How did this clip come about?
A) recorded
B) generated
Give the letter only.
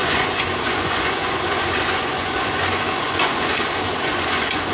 B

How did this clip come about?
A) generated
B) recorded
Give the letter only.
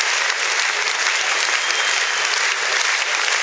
B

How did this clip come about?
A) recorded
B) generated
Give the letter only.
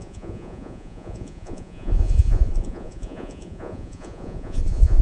B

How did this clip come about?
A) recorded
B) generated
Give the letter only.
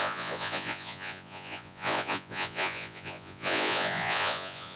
B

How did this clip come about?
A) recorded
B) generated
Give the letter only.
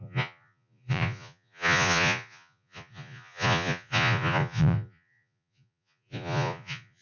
B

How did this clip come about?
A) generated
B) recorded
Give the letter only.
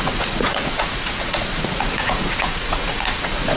A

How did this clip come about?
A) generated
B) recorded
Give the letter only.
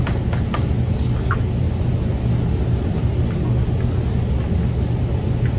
B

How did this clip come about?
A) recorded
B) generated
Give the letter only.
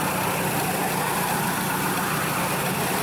A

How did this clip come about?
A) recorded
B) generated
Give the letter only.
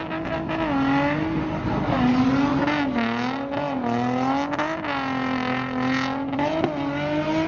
A